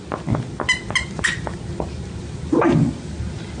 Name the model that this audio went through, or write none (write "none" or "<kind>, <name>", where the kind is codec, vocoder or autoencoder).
none